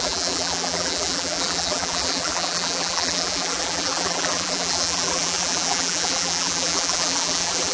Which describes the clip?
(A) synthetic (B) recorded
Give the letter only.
A